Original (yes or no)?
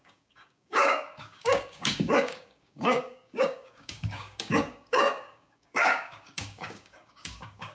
no